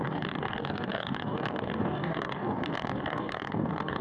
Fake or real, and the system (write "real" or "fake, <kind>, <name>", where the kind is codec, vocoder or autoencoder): fake, codec, DAC